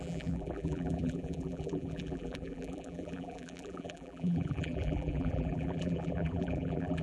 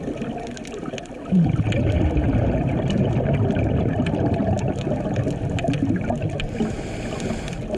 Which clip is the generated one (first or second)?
first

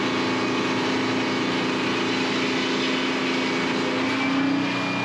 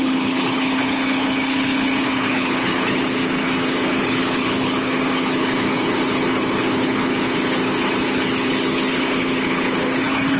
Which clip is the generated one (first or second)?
second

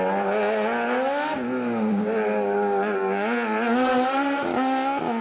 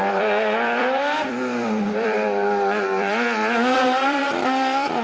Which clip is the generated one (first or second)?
second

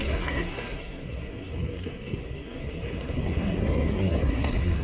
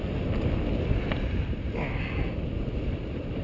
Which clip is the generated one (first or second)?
first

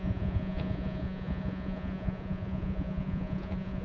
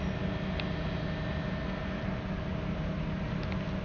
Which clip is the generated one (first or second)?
first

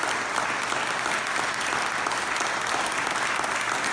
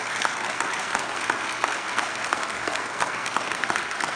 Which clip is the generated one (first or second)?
second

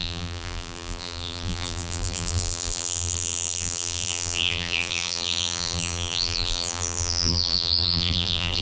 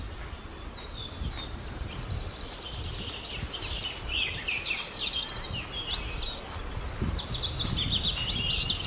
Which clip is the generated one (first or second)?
first